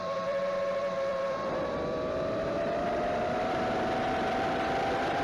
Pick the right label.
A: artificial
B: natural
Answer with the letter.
A